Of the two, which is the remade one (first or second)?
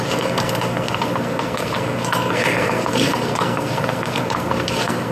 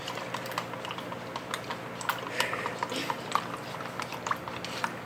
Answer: first